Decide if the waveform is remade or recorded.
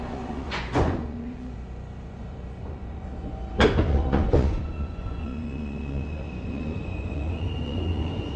remade